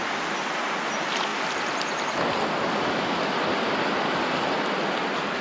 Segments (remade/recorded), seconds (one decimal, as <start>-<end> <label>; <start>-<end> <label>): 0.0-5.4 recorded